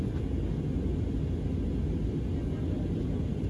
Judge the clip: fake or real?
real